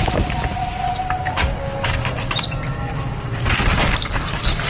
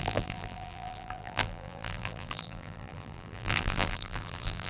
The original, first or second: first